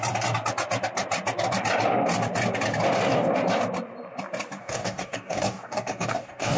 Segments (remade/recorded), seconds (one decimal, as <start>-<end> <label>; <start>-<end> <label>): 0.0-4.6 recorded; 4.6-6.6 remade